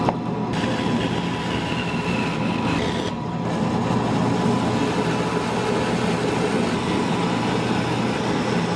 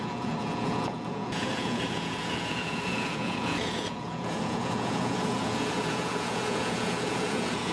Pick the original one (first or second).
first